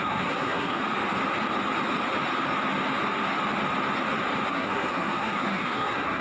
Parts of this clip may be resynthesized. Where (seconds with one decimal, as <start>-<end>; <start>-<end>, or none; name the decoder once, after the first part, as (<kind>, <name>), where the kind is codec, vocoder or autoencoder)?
0.0-0.8 (codec, SNAC); 4.5-6.2